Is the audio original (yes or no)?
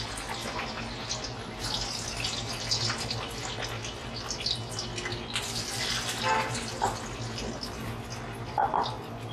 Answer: yes